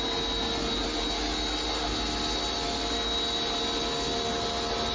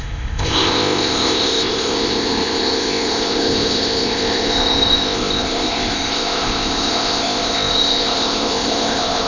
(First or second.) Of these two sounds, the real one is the first